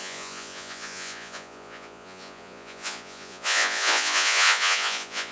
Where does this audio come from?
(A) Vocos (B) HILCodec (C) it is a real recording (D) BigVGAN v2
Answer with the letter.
A